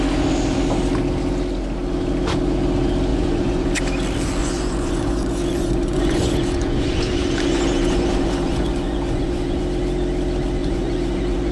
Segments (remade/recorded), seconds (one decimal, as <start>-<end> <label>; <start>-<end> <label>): 0.0-3.1 recorded; 3.1-3.8 remade; 3.8-4.4 recorded; 4.4-9.6 remade; 9.6-10.6 recorded; 10.6-11.5 remade

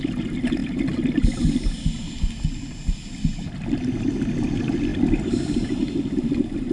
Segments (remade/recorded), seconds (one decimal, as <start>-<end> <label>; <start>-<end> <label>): 0.0-6.7 recorded

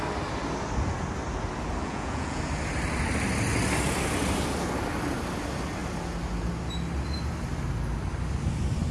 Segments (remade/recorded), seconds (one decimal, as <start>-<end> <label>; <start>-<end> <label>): 0.0-1.8 recorded; 1.8-2.4 remade; 2.4-8.9 recorded

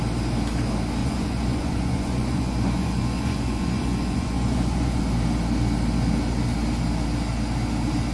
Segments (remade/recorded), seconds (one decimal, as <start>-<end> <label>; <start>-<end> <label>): 0.0-1.0 recorded; 1.0-5.0 remade; 5.0-8.1 recorded

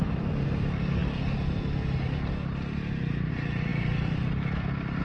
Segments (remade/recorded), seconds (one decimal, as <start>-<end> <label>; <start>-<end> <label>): 0.0-5.0 recorded

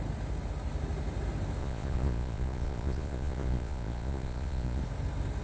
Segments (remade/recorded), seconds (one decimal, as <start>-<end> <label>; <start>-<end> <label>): 0.0-1.6 recorded; 1.6-4.8 remade; 4.8-5.4 recorded